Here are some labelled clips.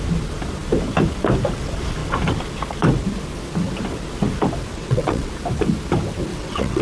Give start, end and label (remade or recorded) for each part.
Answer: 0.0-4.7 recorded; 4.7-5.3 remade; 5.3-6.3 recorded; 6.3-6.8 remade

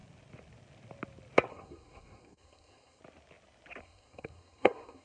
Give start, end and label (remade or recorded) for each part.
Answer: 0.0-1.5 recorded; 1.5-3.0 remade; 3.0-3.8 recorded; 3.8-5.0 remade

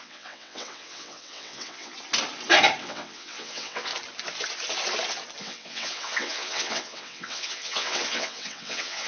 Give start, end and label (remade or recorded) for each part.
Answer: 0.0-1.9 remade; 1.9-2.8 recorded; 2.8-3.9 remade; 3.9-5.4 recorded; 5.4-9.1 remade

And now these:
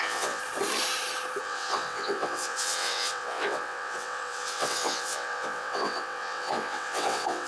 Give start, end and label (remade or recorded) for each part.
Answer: 0.0-0.4 remade; 0.4-1.4 recorded; 1.4-7.5 remade

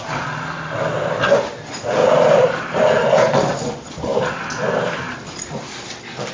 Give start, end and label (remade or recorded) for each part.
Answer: 0.0-6.3 remade

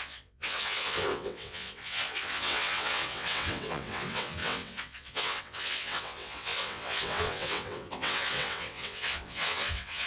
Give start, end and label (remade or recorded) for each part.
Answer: 0.0-10.1 remade

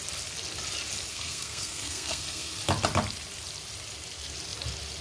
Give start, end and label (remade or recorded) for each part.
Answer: 0.0-1.1 recorded; 1.1-2.6 remade; 2.6-5.0 recorded